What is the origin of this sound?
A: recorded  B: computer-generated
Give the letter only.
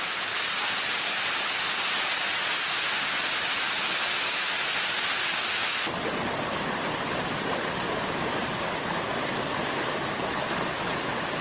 A